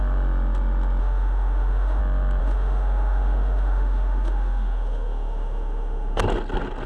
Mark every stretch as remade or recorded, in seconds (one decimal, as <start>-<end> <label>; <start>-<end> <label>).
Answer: 0.0-1.0 recorded; 1.0-2.0 remade; 2.0-2.4 recorded; 2.4-6.2 remade; 6.2-6.9 recorded